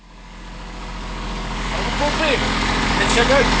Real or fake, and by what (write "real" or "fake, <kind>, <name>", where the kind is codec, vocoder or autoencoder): fake, codec, DAC